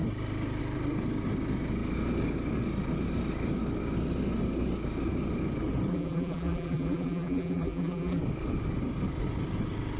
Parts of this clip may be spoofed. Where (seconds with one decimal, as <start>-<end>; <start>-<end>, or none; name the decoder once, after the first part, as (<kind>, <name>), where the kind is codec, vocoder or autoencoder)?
5.9-8.2 (vocoder, BigVGAN v2)